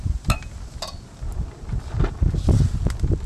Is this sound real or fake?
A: real